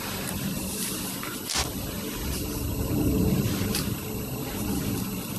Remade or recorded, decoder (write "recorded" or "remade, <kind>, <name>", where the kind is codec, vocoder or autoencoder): recorded